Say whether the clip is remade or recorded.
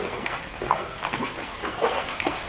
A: remade